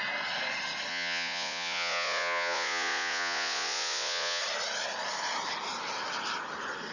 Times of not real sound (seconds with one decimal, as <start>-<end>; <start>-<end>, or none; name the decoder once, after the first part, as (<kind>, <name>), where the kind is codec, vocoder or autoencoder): 0.9-4.4 (vocoder, Vocos)